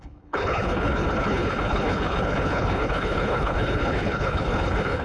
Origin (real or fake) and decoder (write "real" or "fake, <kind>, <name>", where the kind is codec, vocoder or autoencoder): fake, codec, HILCodec